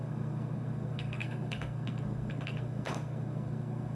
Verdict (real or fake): fake